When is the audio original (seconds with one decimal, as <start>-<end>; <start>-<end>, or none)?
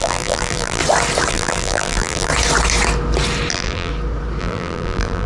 0.8-1.3; 2.3-3.5; 3.9-4.4